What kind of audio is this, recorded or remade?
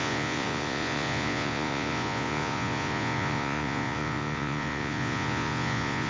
remade